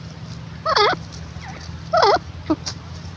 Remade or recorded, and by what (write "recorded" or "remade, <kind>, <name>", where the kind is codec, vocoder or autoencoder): remade, vocoder, BigVGAN v2